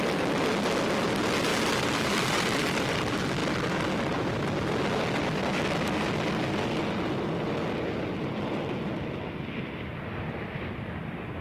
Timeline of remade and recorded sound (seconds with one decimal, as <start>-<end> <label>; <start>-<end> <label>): 0.0-1.5 recorded; 1.5-2.9 remade; 2.9-11.4 recorded